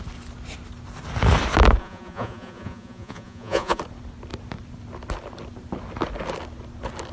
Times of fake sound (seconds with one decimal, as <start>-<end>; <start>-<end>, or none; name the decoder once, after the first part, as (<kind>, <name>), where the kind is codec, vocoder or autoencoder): 1.8-3.8 (vocoder, Vocos)